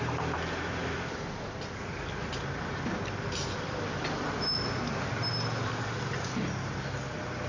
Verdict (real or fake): real